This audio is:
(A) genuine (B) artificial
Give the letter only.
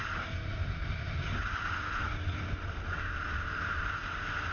A